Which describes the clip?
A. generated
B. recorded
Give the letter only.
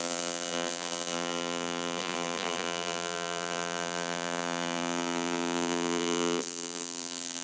A